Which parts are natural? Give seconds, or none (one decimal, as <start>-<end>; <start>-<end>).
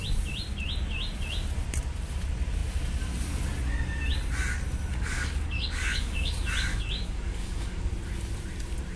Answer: 0.0-4.9; 6.3-6.7; 7.9-9.0